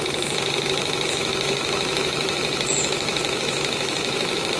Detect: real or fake fake